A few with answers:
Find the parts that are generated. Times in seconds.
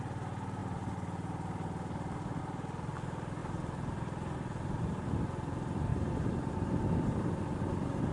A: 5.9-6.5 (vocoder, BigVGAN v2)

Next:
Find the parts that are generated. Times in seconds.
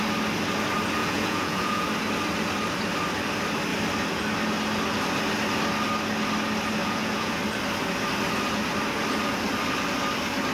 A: 1.0-1.9 (vocoder, Vocos); 6.8-7.4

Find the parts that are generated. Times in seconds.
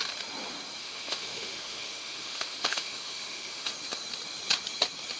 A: 0.8-3.7 (autoencoder, DAC-VAE)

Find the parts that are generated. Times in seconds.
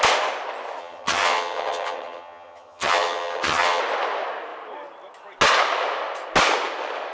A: 0.8-3.8 (vocoder, HiFi-GAN)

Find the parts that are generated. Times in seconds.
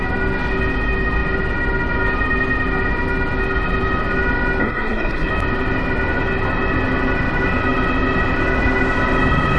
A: 4.6-5.3 (codec, SNAC)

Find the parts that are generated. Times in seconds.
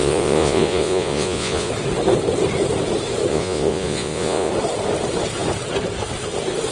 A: 0.0-1.7 (vocoder, Vocos); 3.3-4.5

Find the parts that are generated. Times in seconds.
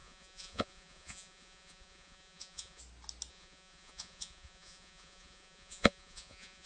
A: 0.0-2.8 (vocoder, Vocos); 3.3-6.7